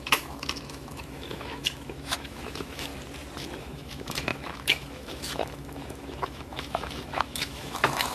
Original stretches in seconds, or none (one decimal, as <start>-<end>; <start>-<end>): 2.9-3.6